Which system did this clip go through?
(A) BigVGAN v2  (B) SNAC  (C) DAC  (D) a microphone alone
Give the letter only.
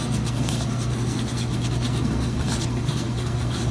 B